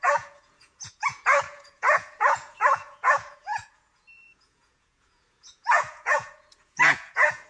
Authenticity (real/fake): fake